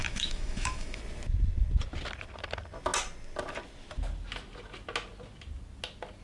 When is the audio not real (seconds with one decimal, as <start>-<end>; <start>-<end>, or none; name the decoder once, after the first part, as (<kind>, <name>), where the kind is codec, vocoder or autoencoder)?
0.0-1.0 (autoencoder, DAC-VAE)